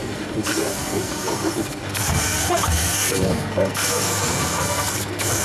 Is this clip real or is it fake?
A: fake